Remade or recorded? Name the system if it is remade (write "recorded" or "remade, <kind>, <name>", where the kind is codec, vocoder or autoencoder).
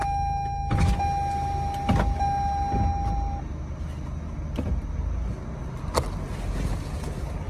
recorded